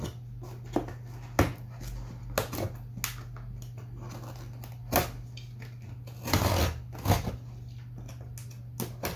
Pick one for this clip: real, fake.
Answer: real